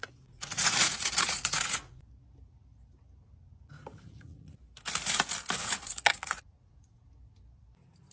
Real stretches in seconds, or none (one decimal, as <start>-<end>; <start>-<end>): 2.0-3.9; 4.6-5.6; 7.1-8.1